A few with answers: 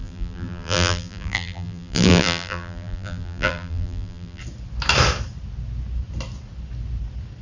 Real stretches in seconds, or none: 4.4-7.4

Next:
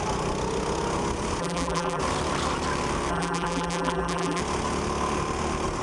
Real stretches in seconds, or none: 0.0-1.4; 2.0-3.1; 4.4-5.8

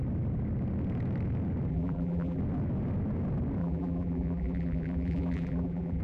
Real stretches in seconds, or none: 0.0-1.7; 2.4-3.6